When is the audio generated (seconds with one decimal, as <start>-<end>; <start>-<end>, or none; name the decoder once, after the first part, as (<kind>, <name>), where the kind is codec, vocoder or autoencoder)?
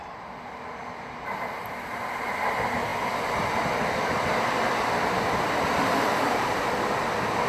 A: none